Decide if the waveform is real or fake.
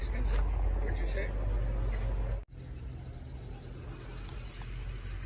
real